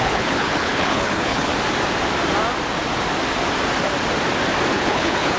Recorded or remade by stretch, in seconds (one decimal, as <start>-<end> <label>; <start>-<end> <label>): 0.0-1.5 remade; 1.5-4.7 recorded; 4.7-5.4 remade